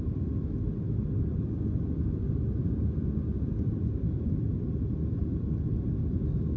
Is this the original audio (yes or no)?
yes